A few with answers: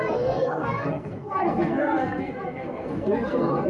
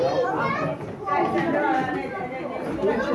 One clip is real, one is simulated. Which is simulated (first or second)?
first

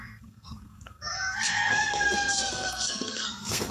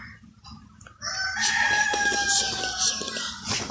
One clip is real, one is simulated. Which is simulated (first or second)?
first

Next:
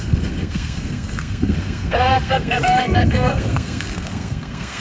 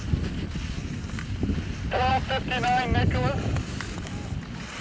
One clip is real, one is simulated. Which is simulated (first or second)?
first